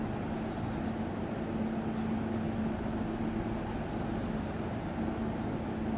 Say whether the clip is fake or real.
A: real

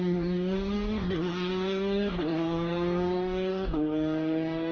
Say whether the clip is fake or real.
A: fake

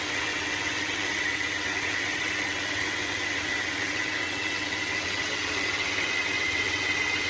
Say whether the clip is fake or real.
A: fake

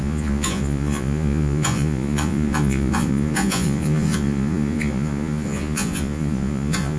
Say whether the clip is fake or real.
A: fake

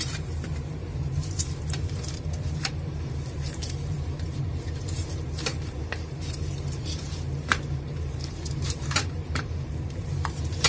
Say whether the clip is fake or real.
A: fake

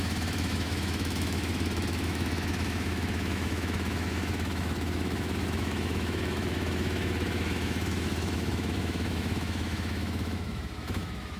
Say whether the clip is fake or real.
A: fake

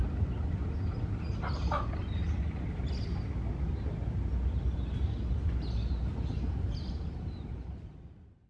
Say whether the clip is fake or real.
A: real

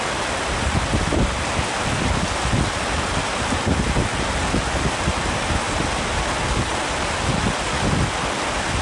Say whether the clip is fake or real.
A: real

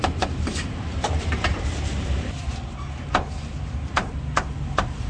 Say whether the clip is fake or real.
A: fake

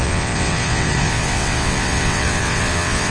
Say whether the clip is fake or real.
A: fake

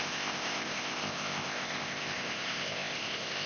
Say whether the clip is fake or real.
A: fake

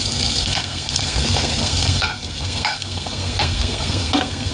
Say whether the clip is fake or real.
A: fake